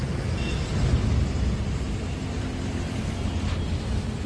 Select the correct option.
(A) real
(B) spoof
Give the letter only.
A